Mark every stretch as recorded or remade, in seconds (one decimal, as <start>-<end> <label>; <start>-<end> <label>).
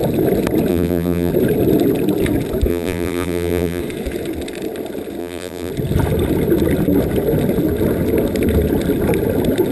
0.0-0.7 recorded; 0.7-1.3 remade; 1.3-2.7 recorded; 2.7-3.8 remade; 3.8-5.2 recorded; 5.2-5.7 remade; 5.7-9.7 recorded